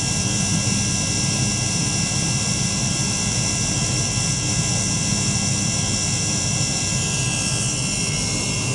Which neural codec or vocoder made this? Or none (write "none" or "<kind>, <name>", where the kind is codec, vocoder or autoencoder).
none